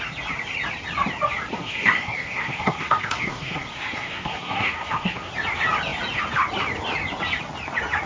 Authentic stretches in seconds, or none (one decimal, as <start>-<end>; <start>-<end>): 0.0-1.5; 5.3-8.1